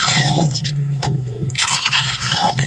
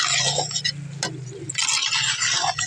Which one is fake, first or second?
first